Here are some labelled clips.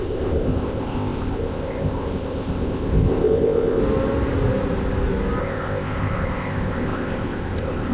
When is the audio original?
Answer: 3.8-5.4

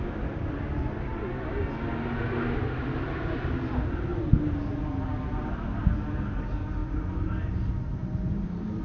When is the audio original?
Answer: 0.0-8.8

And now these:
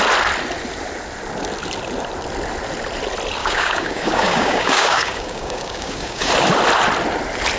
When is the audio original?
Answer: 0.0-3.4; 6.3-7.6

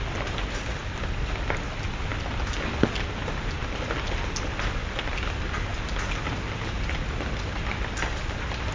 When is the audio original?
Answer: 0.0-8.7

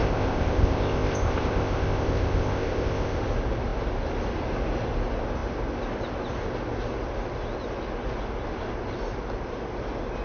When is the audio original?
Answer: 3.2-10.2

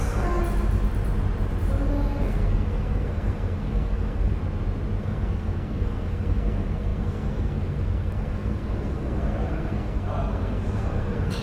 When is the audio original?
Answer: 0.4-2.2; 4.4-5.0